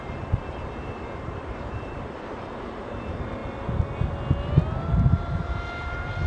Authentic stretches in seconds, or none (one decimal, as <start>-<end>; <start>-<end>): 3.4-5.1